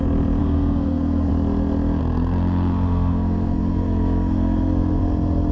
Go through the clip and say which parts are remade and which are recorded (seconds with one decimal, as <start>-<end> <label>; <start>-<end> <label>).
0.0-0.4 recorded; 0.4-1.3 remade; 1.3-2.0 recorded; 2.0-5.0 remade; 5.0-5.5 recorded